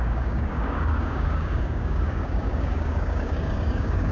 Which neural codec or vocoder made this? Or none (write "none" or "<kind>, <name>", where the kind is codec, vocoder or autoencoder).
codec, DAC